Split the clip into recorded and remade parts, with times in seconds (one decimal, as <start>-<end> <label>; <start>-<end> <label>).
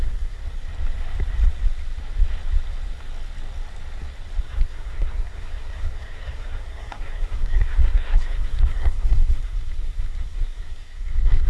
0.0-0.4 remade; 0.4-4.4 recorded; 4.4-11.5 remade